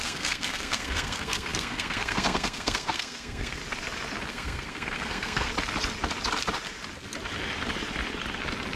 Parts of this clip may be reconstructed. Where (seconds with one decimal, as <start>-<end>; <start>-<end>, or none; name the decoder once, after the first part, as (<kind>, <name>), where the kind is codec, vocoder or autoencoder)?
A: 0.0-3.6 (codec, SNAC); 4.3-5.5

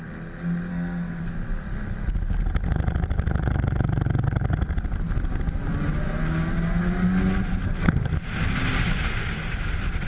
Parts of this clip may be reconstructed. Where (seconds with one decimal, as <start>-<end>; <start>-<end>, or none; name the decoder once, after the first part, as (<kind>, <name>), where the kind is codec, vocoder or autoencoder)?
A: 0.7-1.2 (codec, SNAC)

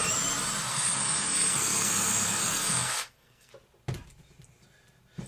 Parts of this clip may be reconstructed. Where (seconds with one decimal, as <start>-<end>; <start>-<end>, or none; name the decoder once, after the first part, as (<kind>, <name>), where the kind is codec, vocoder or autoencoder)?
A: 0.7-3.5 (codec, SNAC)

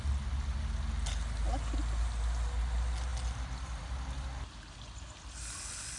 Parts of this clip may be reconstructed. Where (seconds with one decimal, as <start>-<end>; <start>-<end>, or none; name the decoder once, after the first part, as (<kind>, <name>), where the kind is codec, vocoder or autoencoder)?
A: none

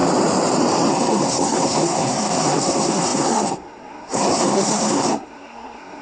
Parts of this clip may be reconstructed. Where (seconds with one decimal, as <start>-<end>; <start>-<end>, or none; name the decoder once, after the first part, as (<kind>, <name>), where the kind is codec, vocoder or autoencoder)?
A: 0.9-6.0 (codec, SNAC)